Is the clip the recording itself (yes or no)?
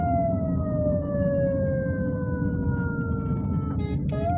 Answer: yes